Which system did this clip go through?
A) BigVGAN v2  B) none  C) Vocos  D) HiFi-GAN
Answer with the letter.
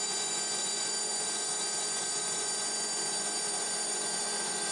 C